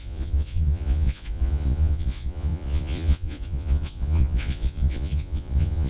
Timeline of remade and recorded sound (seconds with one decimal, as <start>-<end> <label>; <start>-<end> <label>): 0.0-5.9 remade